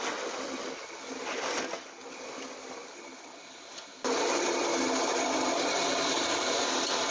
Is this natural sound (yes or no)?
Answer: yes